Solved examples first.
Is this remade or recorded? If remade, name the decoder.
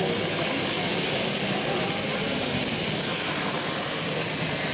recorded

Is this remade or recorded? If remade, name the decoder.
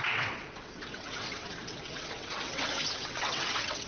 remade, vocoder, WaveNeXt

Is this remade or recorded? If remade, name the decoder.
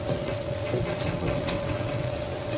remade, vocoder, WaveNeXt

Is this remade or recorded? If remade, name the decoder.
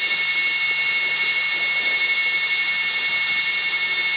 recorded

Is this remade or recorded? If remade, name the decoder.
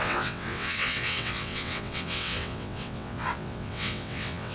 remade, vocoder, WaveNeXt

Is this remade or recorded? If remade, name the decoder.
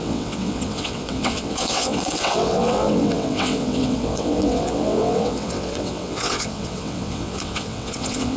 remade, vocoder, WaveNeXt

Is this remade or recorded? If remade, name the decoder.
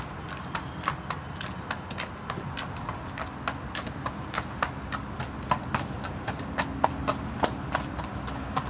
recorded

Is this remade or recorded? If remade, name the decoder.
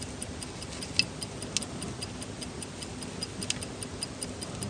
recorded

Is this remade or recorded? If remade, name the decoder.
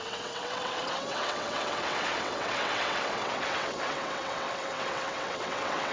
remade, vocoder, WaveNeXt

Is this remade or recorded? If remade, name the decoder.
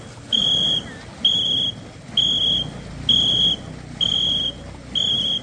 recorded